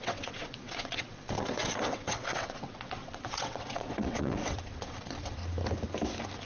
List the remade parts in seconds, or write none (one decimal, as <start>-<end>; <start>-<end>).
0.0-5.4